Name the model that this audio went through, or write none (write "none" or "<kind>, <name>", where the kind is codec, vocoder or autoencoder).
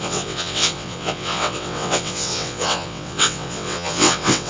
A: vocoder, WaveNeXt